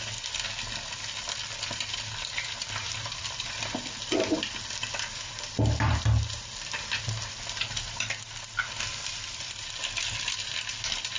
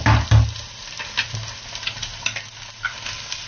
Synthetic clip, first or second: first